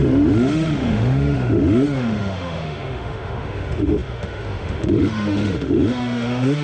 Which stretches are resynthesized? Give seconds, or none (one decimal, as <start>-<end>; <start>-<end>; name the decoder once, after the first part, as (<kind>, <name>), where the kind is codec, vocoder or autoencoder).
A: 0.0-6.6 (autoencoder, DAC-VAE)